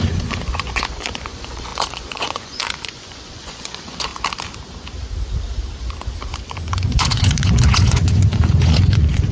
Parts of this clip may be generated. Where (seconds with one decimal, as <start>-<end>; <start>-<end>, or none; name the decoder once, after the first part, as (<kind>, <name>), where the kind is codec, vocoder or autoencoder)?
0.0-4.1 (vocoder, Vocos); 6.7-9.3